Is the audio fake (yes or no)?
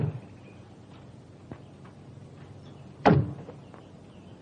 no